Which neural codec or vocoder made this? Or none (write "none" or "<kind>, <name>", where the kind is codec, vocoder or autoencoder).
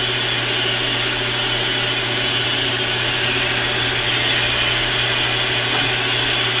none